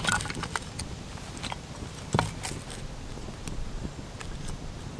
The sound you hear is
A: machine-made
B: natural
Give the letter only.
B